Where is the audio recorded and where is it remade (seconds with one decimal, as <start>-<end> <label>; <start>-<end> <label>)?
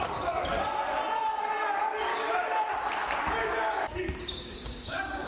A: 0.0-2.1 recorded; 2.1-2.7 remade; 2.7-3.4 recorded; 3.4-5.3 remade